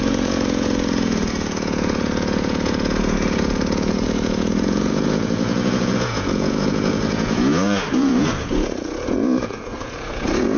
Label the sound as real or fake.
fake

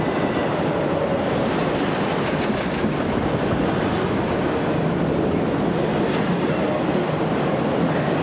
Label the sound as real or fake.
real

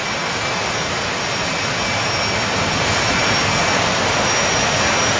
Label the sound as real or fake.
real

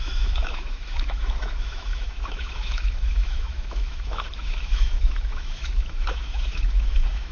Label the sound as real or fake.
fake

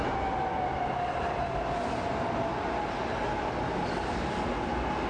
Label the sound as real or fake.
real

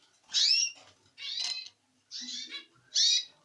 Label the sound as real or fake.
real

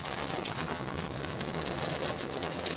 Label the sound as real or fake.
fake